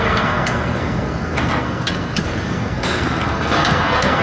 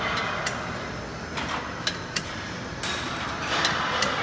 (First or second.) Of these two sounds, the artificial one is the first